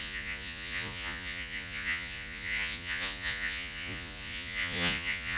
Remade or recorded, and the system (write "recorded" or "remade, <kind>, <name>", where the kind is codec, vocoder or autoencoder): remade, vocoder, Vocos